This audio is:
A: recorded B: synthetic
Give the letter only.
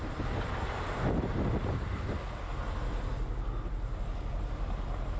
A